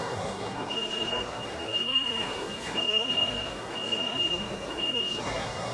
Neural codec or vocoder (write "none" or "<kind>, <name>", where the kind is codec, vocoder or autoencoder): codec, SNAC